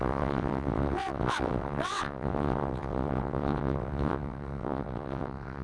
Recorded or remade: remade